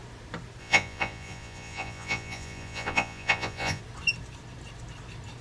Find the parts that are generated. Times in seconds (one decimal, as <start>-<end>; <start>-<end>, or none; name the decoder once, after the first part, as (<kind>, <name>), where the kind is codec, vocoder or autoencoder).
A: 0.6-3.8 (vocoder, Vocos)